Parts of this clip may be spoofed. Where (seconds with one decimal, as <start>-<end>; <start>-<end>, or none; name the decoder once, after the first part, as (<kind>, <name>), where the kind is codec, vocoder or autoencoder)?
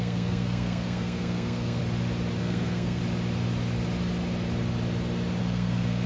0.0-1.8 (codec, SNAC); 2.4-3.0; 5.4-6.1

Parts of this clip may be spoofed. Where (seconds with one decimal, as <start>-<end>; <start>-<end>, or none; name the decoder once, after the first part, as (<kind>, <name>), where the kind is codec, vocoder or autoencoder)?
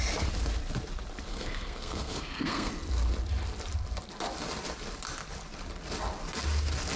1.3-2.7 (codec, SNAC)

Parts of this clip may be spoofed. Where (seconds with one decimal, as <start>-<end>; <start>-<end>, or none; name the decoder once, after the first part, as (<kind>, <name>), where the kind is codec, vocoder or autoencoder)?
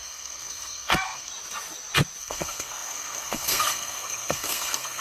0.0-1.3 (codec, SNAC); 2.2-5.0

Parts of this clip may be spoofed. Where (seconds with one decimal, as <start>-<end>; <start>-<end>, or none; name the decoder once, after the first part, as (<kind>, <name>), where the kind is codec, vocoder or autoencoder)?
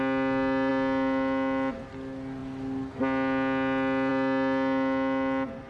none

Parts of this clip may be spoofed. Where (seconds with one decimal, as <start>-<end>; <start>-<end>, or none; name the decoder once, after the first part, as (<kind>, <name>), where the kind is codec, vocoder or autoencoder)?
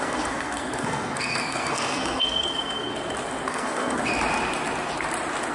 0.0-2.9 (codec, SNAC); 3.5-4.0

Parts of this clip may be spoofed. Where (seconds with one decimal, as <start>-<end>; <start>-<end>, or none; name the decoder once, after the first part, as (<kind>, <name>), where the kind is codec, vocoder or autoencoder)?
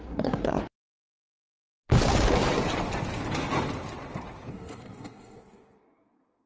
0.0-0.6 (codec, SNAC); 4.5-6.5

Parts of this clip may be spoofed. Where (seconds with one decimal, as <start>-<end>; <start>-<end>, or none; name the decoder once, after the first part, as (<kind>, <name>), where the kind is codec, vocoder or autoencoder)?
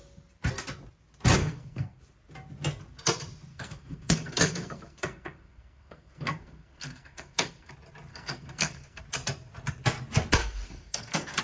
1.4-2.0 (codec, SNAC); 3.5-7.7; 8.1-9.0; 10.4-11.4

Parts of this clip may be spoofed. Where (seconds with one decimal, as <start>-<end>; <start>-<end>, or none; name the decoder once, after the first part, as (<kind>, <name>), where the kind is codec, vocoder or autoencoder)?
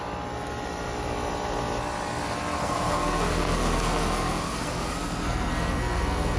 2.6-6.4 (codec, SNAC)